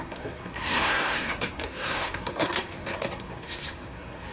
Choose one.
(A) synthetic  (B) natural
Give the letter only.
A